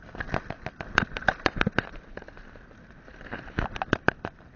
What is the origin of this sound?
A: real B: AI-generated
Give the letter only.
A